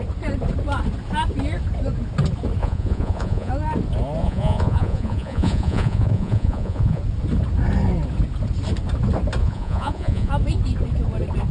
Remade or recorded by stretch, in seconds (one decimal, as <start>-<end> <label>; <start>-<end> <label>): 0.0-2.6 recorded; 2.6-3.5 remade; 3.5-4.2 recorded; 4.2-7.0 remade; 7.0-9.4 recorded; 9.4-10.3 remade; 10.3-11.5 recorded